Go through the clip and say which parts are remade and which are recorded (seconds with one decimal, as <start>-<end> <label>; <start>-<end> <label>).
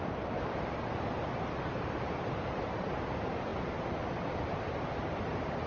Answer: 0.0-3.5 remade; 3.5-4.6 recorded; 4.6-5.7 remade